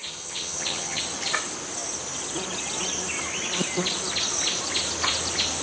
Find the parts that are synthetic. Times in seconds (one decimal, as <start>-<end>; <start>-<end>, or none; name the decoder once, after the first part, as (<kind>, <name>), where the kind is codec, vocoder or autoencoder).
0.0-1.0 (vocoder, HiFi-GAN)